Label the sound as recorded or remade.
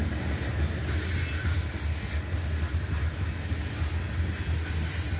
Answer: recorded